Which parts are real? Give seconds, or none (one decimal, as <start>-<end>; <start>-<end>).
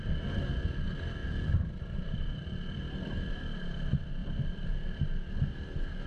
0.0-1.2; 3.3-4.2; 4.7-6.1